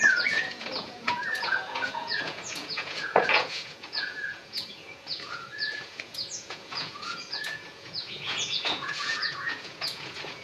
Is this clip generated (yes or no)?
yes